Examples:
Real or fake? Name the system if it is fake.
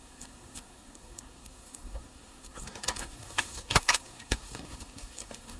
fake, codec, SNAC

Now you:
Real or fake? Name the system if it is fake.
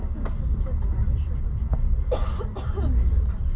real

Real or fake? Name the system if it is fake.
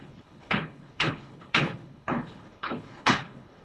fake, codec, HILCodec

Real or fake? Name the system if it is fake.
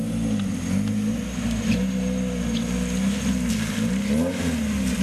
real